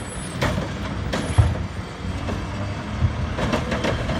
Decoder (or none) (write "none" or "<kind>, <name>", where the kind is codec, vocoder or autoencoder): none